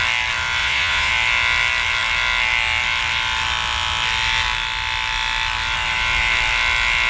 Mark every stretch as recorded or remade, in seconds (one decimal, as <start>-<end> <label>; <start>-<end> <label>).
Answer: 0.0-0.6 recorded; 0.6-1.1 remade; 1.1-7.1 recorded